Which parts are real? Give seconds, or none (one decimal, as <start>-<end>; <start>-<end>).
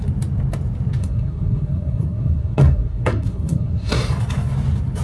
0.0-1.0; 4.0-5.0